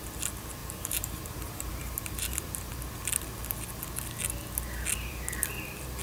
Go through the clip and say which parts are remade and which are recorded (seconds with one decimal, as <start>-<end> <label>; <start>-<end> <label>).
0.0-0.6 recorded; 0.6-2.7 remade; 2.7-6.0 recorded

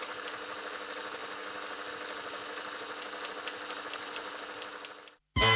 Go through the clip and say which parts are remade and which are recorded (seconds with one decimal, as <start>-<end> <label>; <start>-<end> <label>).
0.0-5.6 recorded

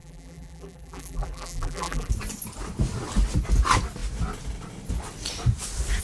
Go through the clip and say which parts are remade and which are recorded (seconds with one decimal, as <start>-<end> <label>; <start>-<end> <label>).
0.0-2.1 remade; 2.1-6.0 recorded